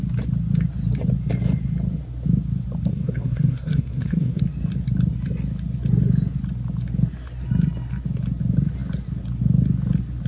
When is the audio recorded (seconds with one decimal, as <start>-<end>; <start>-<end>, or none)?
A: 0.0-2.9; 4.4-10.3